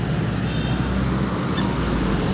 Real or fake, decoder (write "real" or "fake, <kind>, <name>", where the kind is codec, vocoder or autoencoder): real